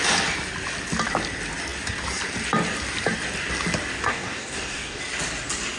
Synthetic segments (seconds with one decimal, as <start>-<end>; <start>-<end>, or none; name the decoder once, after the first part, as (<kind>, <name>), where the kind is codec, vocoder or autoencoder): 4.1-5.0 (codec, DAC)